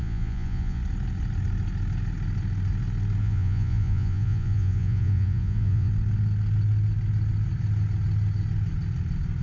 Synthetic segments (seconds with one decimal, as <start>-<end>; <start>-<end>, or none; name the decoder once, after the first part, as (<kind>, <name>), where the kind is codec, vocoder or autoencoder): 0.0-0.8 (vocoder, Vocos); 3.2-5.9